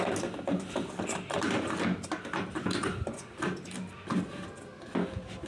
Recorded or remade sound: recorded